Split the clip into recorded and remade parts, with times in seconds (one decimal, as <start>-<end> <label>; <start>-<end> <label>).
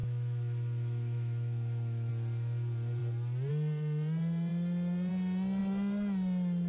0.0-2.1 remade; 2.1-6.7 recorded